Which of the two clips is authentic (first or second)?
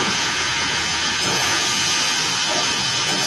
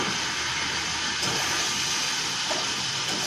second